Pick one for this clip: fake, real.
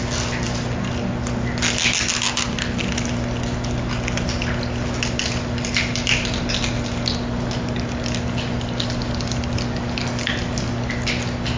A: real